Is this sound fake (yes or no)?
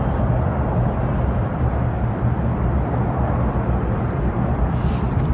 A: yes